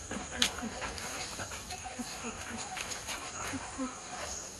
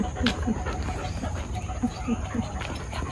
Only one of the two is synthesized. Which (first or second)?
first